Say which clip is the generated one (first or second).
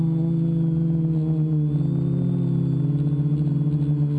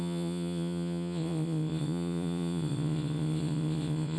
second